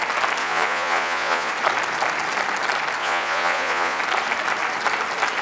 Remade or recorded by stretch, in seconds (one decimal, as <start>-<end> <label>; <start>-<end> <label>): 0.0-0.4 recorded; 0.4-1.5 remade; 1.5-3.0 recorded; 3.0-4.0 remade; 4.0-5.4 recorded